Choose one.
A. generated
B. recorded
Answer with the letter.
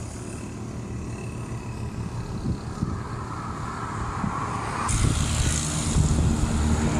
B